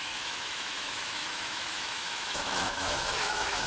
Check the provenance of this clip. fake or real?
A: fake